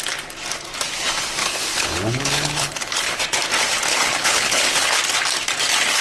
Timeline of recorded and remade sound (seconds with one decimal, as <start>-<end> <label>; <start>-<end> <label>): 0.0-1.4 recorded; 1.4-3.2 remade; 3.2-3.9 recorded; 3.9-5.0 remade; 5.0-6.0 recorded